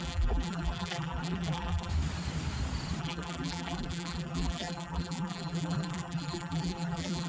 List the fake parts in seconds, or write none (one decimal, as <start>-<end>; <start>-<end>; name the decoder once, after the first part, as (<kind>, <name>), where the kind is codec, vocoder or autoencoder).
0.0-1.9 (vocoder, BigVGAN v2); 3.0-7.3